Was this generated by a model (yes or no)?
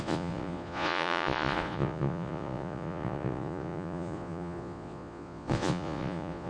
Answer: yes